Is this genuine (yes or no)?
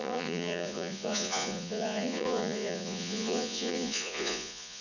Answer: no